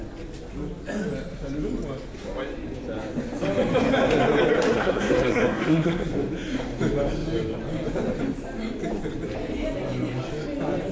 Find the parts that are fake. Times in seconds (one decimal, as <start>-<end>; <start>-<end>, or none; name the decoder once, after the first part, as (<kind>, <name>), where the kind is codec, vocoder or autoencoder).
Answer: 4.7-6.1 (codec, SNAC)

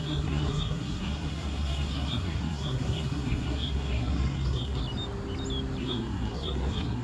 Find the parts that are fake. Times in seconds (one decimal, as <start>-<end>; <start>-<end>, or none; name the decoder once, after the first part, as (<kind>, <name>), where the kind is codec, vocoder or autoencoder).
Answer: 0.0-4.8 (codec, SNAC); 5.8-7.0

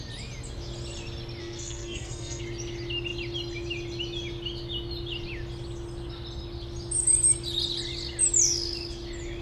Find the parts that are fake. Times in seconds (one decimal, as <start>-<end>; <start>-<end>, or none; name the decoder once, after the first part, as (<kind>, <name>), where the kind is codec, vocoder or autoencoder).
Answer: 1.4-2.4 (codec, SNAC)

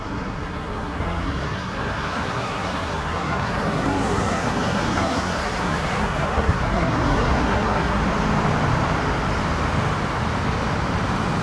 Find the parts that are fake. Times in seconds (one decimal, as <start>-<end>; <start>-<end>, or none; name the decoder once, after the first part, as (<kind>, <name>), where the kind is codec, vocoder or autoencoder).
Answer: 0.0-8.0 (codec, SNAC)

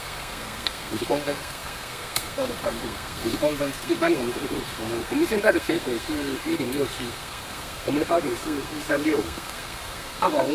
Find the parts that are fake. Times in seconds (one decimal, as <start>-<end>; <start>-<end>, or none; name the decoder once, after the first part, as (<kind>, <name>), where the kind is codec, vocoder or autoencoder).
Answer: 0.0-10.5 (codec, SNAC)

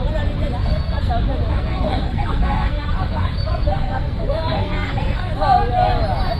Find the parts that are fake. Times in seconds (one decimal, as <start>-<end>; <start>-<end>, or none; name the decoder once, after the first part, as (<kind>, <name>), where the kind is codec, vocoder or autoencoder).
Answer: 0.6-1.1 (codec, SNAC); 1.5-5.3

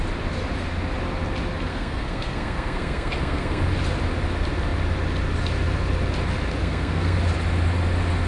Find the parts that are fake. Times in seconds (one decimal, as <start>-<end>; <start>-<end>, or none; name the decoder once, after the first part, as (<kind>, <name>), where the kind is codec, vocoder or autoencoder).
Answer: 1.7-3.6 (codec, SNAC); 6.6-7.2